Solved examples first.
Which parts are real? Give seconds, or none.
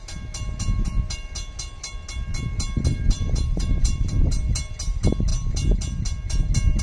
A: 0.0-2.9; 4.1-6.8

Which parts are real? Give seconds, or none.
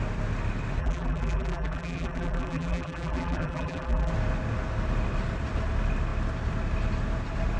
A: 0.0-0.8; 4.1-7.6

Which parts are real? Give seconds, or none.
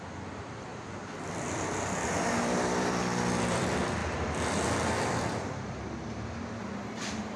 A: 0.7-2.3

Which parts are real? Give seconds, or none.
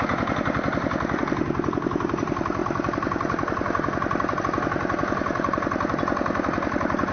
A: none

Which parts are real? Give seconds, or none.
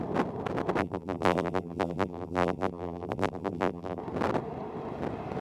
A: 0.0-0.8; 4.0-5.4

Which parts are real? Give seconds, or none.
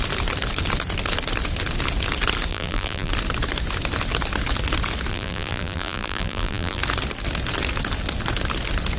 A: 0.0-2.5; 3.1-5.1; 6.8-9.0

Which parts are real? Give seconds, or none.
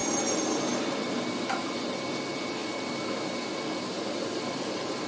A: 2.0-2.6